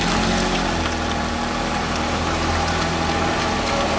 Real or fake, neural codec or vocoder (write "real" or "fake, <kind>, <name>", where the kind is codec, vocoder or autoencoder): real